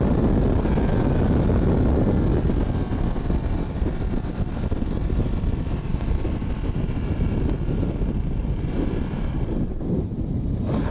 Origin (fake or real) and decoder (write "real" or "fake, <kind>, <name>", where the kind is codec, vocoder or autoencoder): real